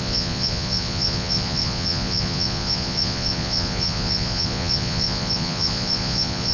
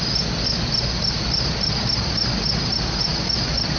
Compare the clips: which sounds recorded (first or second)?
second